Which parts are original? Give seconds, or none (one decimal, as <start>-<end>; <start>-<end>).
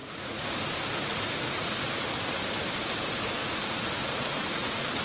0.6-1.1; 1.8-3.4